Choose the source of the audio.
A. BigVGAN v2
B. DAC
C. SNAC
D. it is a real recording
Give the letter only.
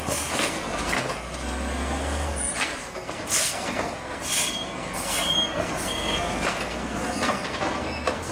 C